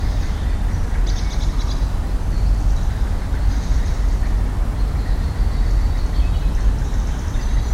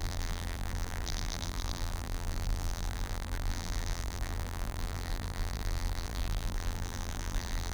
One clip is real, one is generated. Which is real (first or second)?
first